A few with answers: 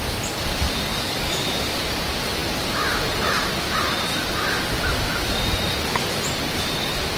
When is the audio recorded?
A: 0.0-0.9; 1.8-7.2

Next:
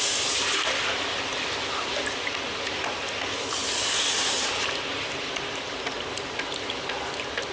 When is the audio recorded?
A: 0.0-7.5

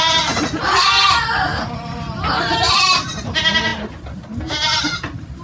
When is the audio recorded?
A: 0.0-5.4

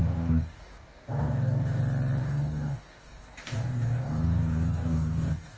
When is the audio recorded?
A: 1.8-2.2